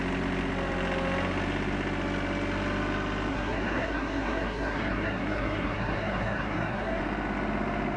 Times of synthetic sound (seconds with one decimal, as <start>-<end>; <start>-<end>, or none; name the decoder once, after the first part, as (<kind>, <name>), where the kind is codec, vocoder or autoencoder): 3.3-7.0 (codec, SNAC)